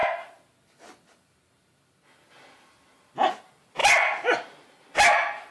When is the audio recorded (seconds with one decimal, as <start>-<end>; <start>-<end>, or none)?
0.0-5.5